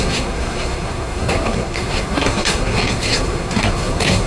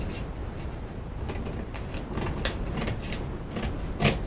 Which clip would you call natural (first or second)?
second